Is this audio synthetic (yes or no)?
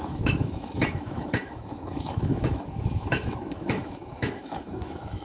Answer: yes